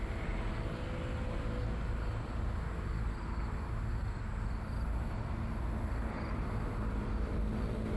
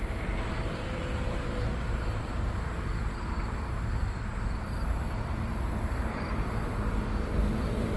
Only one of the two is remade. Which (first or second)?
second